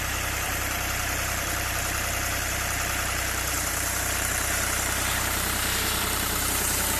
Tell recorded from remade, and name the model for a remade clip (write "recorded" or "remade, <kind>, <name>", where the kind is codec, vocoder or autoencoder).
remade, vocoder, BigVGAN v2